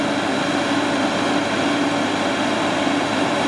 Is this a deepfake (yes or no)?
no